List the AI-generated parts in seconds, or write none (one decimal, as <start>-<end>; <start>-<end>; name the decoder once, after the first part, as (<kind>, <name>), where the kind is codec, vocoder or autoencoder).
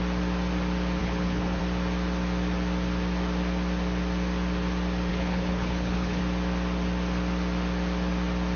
1.0-1.6 (codec, HILCodec); 5.1-6.2